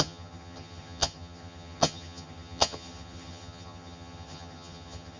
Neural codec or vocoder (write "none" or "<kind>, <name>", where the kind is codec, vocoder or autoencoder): vocoder, HiFi-GAN